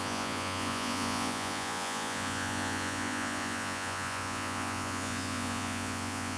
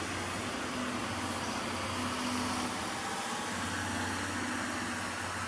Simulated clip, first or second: first